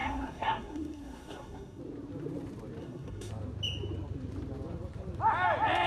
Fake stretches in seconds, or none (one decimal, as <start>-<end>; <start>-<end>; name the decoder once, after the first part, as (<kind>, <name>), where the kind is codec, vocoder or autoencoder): 0.0-1.8 (codec, SNAC); 2.8-3.3